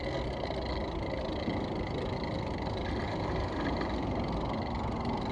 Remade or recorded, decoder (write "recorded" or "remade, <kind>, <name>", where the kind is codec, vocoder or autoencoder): recorded